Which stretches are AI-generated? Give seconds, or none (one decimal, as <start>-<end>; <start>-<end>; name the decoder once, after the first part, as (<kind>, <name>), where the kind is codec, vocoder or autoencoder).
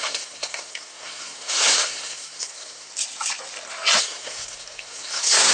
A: 0.0-2.9 (codec, SNAC); 4.0-5.5